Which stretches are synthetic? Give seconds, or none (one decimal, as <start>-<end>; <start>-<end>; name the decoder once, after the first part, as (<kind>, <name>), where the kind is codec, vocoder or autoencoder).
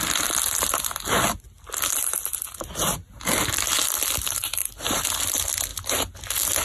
none